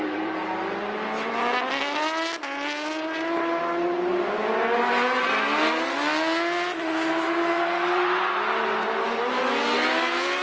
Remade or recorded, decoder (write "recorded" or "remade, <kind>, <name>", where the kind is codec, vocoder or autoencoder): recorded